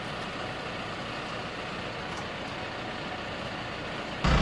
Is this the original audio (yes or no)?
yes